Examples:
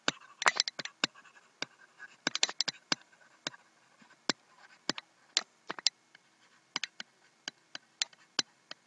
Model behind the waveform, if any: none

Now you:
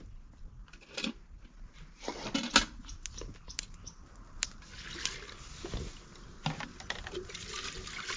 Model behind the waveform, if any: none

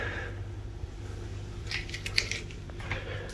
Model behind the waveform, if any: none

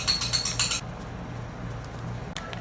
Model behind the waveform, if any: none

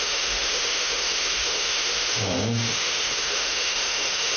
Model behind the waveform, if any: autoencoder, DAC-VAE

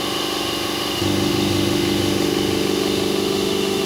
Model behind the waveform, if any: autoencoder, DAC-VAE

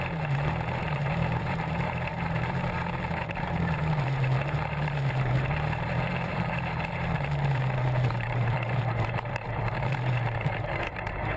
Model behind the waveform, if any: vocoder, BigVGAN v2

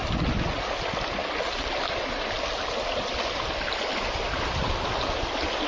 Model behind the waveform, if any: none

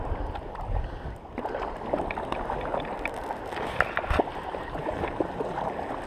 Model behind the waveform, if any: none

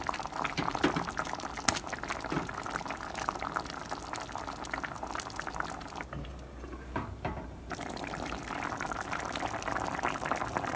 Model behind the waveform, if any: none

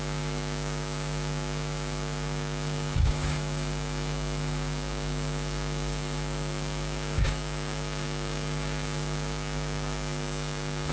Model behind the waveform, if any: codec, DAC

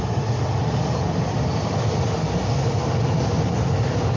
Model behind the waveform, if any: none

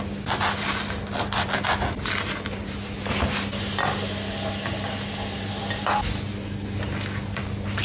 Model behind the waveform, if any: none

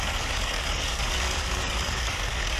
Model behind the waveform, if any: codec, DAC